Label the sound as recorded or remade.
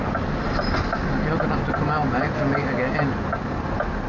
recorded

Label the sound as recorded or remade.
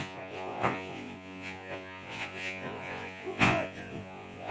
remade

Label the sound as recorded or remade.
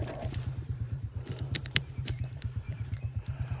remade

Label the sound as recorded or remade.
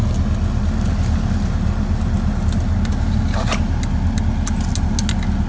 recorded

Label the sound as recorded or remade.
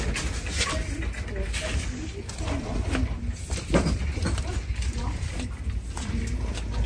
recorded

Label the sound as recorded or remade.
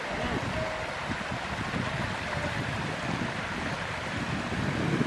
recorded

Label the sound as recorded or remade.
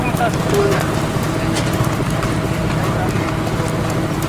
recorded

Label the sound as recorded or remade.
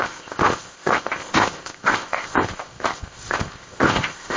remade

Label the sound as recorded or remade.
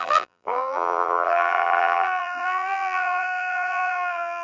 remade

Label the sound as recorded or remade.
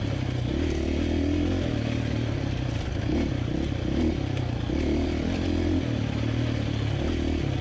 recorded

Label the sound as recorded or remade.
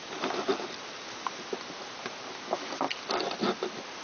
recorded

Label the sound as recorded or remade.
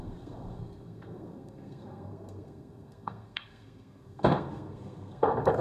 remade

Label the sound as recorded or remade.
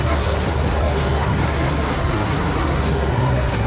remade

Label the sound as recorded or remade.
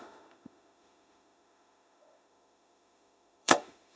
remade